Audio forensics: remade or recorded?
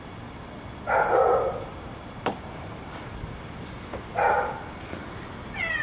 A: recorded